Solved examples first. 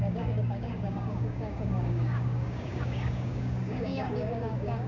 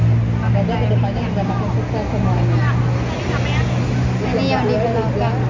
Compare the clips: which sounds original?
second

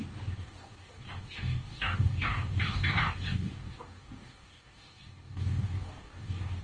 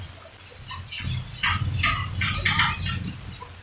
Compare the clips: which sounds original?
second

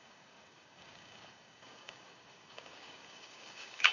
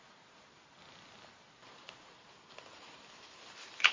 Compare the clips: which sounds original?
second